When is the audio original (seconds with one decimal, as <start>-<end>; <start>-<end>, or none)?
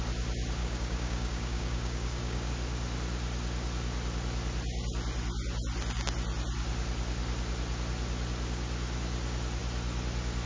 0.0-0.6; 2.5-10.5